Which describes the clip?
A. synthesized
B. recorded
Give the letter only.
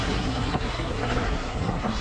A